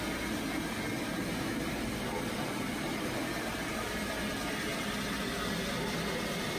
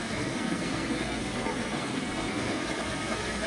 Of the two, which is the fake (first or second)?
second